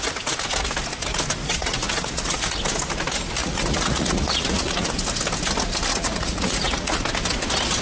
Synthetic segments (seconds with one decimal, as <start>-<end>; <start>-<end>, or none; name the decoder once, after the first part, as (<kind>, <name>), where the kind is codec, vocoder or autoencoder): 1.6-2.6 (vocoder, Vocos); 3.4-4.9; 5.9-7.0